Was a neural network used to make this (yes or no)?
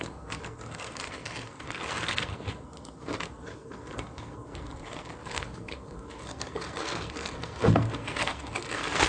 yes